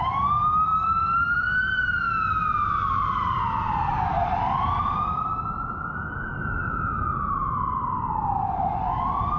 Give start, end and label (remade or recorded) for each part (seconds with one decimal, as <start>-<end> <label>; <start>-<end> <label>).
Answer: 0.0-3.9 recorded; 3.9-5.3 remade; 5.3-9.4 recorded

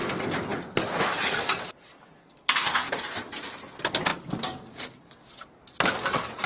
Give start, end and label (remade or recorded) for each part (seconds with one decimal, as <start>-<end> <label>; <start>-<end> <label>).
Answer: 0.0-2.2 recorded; 2.2-2.9 remade; 2.9-6.5 recorded

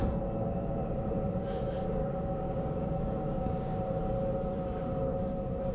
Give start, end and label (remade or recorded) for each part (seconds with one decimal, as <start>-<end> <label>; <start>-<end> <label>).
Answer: 0.0-2.0 recorded; 2.0-3.8 remade; 3.8-5.7 recorded

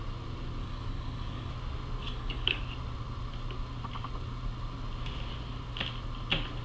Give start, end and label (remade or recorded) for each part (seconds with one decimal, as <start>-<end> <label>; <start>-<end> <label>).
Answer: 0.0-0.6 recorded; 0.6-1.5 remade; 1.5-2.0 recorded; 2.0-2.6 remade; 2.6-6.6 recorded

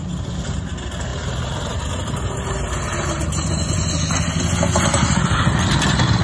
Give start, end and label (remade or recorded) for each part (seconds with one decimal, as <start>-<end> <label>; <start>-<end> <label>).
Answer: 0.0-6.2 recorded